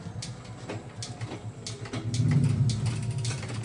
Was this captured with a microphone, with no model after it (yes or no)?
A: yes